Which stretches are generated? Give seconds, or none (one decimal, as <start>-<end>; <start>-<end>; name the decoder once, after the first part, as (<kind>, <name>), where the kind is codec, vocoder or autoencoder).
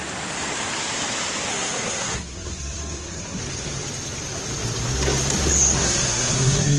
1.5-3.4 (codec, SNAC); 5.8-6.8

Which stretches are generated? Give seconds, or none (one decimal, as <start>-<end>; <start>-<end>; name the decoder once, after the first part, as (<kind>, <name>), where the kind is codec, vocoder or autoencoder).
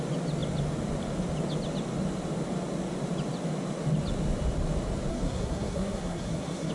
5.1-6.7 (codec, SNAC)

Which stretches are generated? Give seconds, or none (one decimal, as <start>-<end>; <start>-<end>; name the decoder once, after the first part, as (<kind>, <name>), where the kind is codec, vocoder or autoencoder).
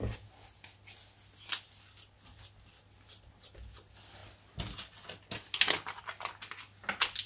none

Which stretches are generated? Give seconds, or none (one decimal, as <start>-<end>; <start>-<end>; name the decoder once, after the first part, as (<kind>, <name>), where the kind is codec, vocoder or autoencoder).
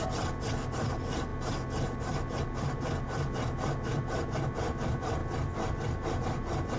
none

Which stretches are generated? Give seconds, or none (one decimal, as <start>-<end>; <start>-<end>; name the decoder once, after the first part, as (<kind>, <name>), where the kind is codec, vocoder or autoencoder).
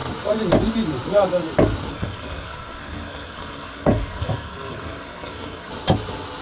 1.9-5.7 (codec, SNAC)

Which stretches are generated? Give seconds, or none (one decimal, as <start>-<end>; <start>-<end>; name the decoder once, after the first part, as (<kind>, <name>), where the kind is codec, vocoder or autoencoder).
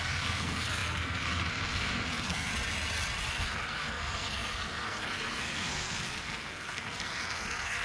0.0-2.5 (codec, SNAC); 3.3-7.8